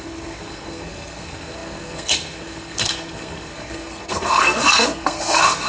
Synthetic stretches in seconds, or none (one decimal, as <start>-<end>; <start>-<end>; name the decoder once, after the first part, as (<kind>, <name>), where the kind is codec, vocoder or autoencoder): 0.0-5.7 (codec, SNAC)